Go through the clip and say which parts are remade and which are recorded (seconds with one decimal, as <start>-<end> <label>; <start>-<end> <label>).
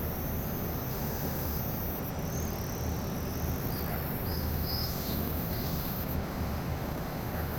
0.0-0.9 recorded; 0.9-1.6 remade; 1.6-4.3 recorded; 4.3-7.6 remade